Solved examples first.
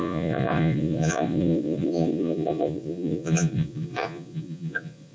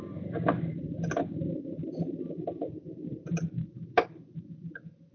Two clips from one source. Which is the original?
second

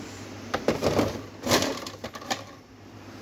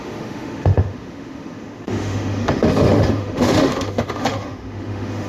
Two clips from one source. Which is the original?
first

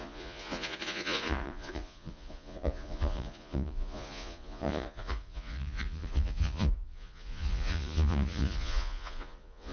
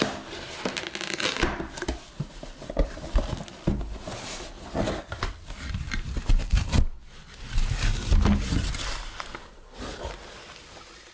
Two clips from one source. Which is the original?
second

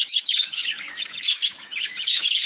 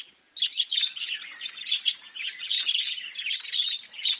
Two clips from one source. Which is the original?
second